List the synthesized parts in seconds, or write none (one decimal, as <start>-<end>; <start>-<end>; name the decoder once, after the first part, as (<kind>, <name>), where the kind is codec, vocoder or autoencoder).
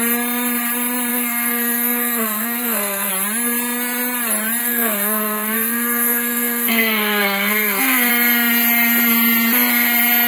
1.1-3.1 (codec, SNAC); 4.6-8.1